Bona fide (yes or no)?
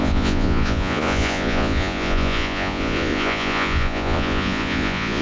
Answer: no